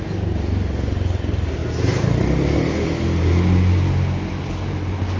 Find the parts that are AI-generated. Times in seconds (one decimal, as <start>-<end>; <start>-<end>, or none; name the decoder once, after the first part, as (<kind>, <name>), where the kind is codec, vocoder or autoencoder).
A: none